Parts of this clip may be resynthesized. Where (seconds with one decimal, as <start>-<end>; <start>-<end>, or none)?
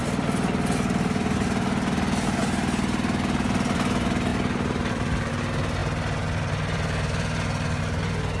4.3-5.3